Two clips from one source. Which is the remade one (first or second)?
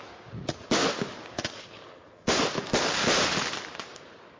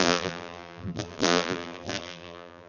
second